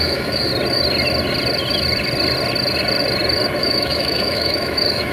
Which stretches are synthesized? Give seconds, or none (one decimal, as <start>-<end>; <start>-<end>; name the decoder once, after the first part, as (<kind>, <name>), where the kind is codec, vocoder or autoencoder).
0.0-0.5 (autoencoder, DAC-VAE); 3.6-5.1